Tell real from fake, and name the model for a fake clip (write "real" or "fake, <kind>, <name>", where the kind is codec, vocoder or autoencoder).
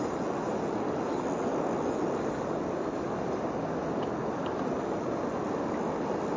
real